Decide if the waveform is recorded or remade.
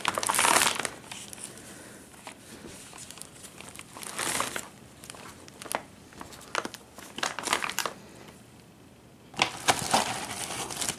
recorded